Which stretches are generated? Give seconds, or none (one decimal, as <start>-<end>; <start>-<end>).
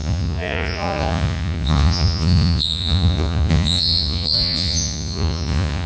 0.0-5.9